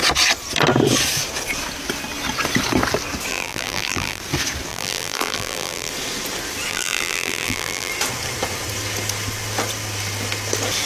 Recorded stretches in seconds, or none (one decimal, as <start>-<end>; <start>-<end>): 0.0-3.3; 4.2-4.7; 5.9-6.7; 7.9-10.9